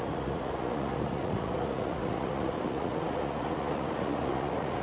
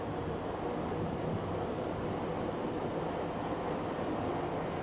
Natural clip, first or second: second